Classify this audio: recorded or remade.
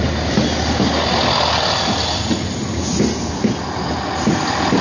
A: recorded